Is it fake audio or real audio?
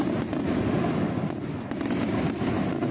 real